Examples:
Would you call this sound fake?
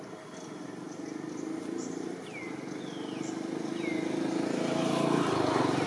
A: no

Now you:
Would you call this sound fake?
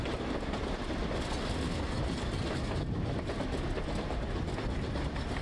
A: no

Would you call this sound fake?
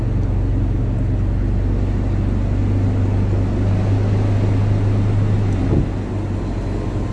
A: no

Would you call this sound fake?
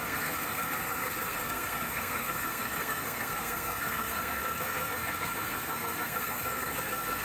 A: yes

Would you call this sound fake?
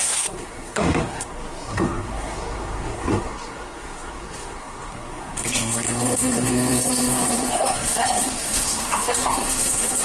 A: yes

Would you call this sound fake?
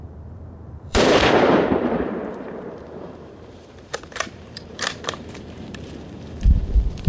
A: yes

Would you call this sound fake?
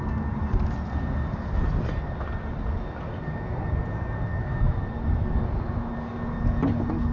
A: no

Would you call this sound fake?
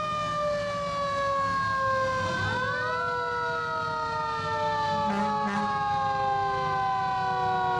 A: no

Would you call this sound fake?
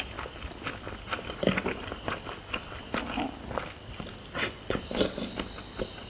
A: no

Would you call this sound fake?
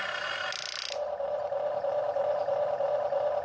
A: no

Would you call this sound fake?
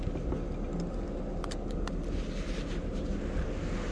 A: no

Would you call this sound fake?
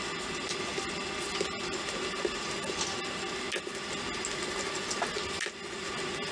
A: no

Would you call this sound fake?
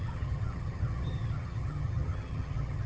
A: yes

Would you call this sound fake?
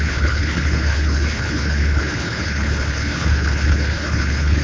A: yes